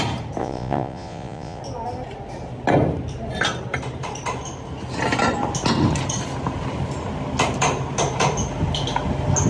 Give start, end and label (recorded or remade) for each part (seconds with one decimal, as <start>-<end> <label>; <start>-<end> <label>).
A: 0.0-0.4 recorded; 0.4-1.6 remade; 1.6-9.5 recorded